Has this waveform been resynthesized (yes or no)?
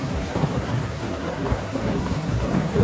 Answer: yes